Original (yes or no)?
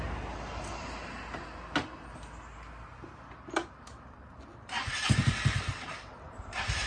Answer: yes